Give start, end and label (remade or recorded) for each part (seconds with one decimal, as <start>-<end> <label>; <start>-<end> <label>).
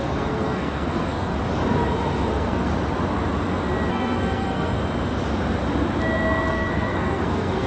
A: 0.0-1.3 remade; 1.3-2.3 recorded; 2.3-2.7 remade; 2.7-3.9 recorded; 3.9-4.8 remade; 4.8-6.5 recorded; 6.5-7.7 remade